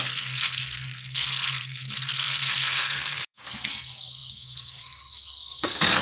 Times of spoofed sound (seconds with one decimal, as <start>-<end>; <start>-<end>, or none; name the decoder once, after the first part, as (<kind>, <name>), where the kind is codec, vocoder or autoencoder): 0.0-6.0 (codec, SNAC)